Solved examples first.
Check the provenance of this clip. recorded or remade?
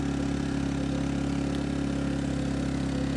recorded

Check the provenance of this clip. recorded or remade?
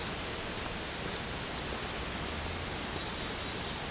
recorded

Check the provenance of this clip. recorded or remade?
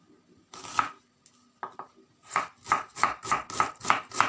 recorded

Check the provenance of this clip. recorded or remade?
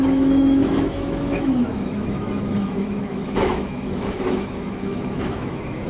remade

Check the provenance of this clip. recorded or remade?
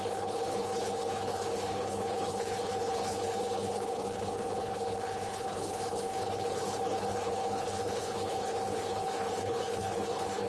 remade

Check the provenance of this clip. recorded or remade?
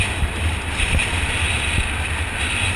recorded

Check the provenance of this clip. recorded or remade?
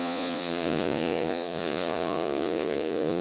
remade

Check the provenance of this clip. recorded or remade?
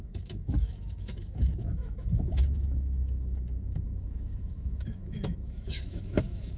remade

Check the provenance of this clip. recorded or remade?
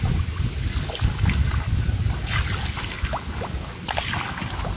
recorded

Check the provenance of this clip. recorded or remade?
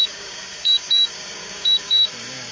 remade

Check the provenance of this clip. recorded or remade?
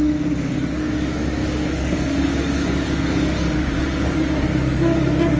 remade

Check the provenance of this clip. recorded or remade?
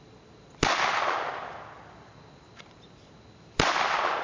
recorded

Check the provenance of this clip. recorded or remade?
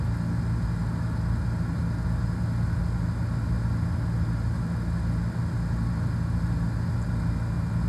recorded